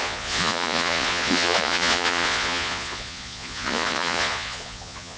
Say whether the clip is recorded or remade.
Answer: remade